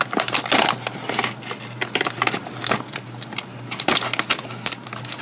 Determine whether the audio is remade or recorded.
recorded